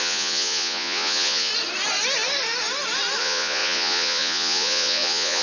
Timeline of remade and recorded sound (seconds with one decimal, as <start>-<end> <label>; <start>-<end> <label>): 0.0-1.5 remade; 1.5-3.2 recorded; 3.2-5.4 remade